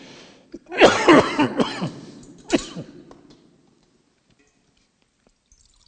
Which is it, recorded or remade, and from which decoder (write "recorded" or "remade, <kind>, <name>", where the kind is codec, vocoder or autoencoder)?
recorded